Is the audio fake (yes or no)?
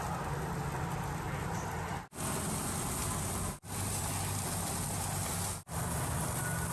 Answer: no